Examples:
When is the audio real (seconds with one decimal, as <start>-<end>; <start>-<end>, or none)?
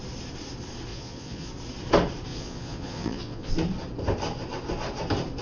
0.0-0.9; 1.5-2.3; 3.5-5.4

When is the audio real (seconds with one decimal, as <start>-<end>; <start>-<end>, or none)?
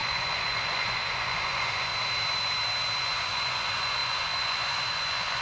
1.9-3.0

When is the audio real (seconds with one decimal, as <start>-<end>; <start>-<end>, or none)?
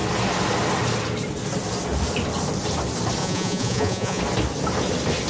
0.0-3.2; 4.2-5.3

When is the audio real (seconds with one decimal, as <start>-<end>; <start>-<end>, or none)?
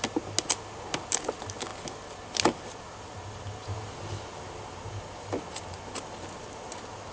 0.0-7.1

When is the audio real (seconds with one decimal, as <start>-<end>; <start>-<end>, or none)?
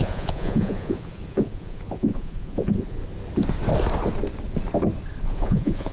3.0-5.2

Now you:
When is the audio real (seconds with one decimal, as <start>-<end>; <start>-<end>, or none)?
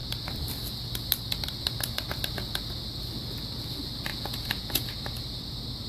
0.0-4.1; 4.9-5.9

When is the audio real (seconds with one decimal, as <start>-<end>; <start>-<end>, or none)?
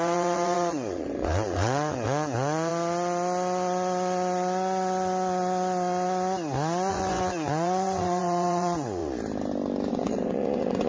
2.7-6.9; 9.0-9.9